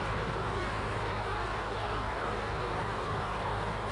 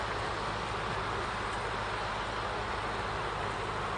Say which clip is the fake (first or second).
first